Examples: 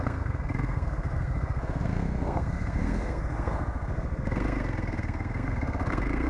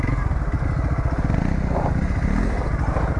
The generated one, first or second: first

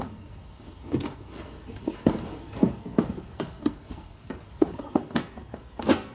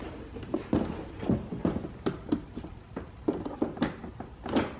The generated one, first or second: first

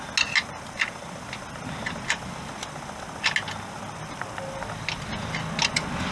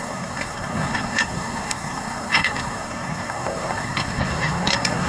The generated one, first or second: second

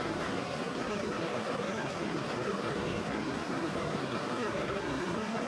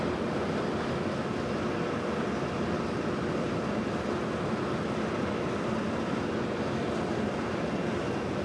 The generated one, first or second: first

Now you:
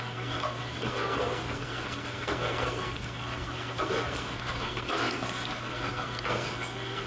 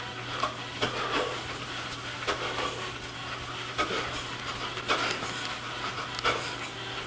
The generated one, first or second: first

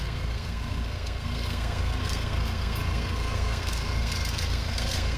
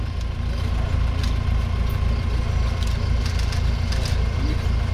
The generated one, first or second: first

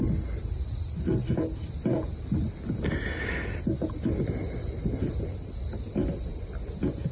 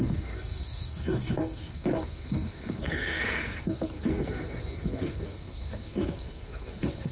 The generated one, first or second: second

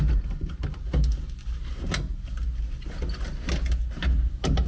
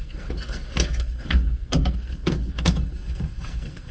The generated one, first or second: second